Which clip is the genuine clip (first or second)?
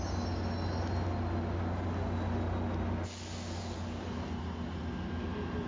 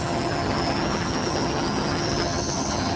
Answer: first